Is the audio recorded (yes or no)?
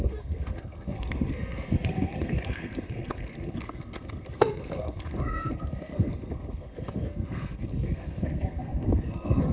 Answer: no